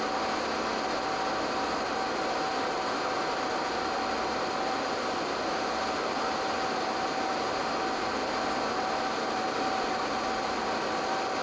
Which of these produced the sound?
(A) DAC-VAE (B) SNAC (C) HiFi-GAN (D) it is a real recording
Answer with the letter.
D